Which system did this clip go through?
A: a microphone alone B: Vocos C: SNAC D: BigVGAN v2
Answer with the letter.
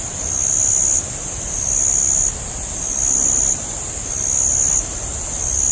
A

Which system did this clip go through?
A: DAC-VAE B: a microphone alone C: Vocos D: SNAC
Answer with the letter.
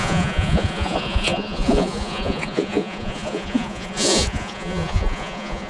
C